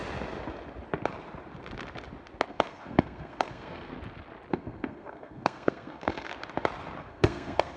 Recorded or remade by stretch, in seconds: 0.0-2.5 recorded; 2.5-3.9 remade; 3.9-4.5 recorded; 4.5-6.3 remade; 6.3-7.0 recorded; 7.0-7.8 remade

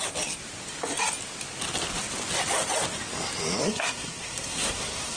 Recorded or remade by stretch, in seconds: 0.0-3.6 recorded; 3.6-5.2 remade

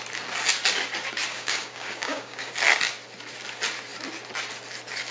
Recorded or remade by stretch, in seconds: 0.0-1.3 recorded; 1.3-2.5 remade; 2.5-5.1 recorded

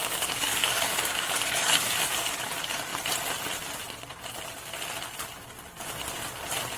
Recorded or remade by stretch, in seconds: 0.0-2.5 remade; 2.5-6.8 recorded

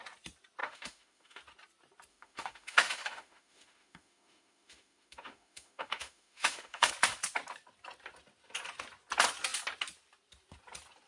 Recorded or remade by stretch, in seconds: 0.0-0.6 recorded; 0.6-1.4 remade; 1.4-2.1 recorded; 2.1-6.9 remade; 6.9-11.1 recorded

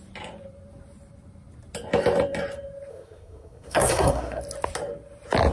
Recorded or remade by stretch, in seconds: 0.0-2.9 recorded; 2.9-4.4 remade; 4.4-5.5 recorded

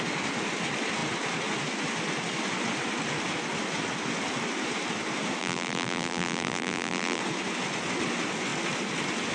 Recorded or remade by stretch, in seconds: 0.0-5.4 recorded; 5.4-7.2 remade; 7.2-9.3 recorded

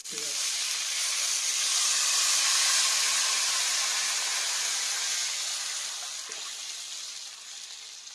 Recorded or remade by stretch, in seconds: 0.0-4.3 remade; 4.3-8.1 recorded